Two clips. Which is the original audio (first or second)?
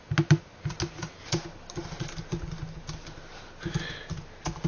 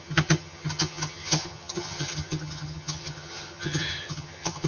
first